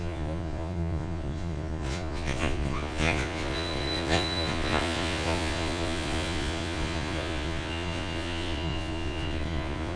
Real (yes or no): no